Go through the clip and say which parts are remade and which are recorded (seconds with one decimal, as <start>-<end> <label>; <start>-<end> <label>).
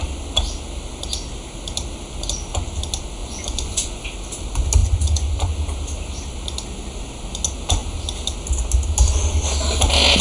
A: 0.0-3.2 recorded; 3.2-4.0 remade; 4.0-4.8 recorded; 4.8-5.5 remade; 5.5-10.2 recorded